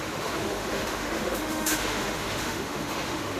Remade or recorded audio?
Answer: remade